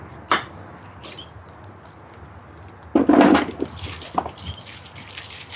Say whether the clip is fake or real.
real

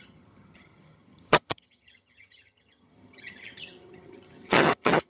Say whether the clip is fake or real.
fake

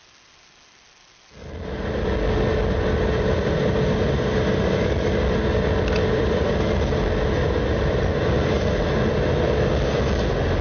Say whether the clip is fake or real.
real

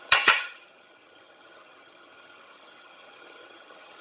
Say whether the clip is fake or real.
fake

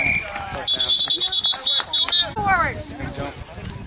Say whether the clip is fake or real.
real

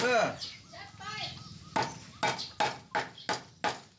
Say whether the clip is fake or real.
real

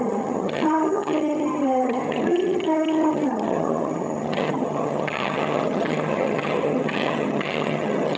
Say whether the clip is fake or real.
fake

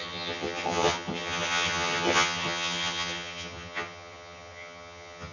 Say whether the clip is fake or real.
fake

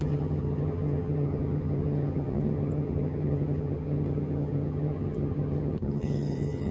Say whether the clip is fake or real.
fake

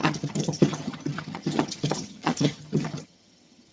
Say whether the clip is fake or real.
fake